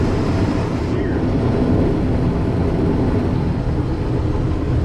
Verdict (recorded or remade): recorded